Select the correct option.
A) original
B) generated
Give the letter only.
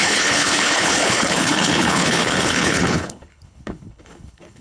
B